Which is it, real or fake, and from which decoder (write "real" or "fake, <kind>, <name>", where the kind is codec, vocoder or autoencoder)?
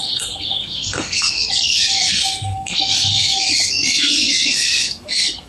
fake, codec, SNAC